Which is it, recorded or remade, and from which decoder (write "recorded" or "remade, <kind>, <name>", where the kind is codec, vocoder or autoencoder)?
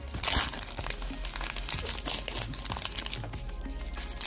recorded